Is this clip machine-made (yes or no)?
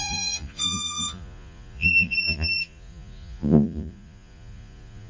yes